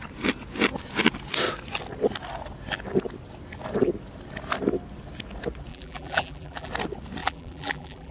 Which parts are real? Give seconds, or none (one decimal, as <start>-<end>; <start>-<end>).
0.0-5.7; 6.7-7.2